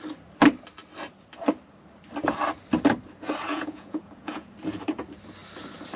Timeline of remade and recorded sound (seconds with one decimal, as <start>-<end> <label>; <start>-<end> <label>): 0.0-3.5 recorded; 3.5-4.5 remade; 4.5-6.0 recorded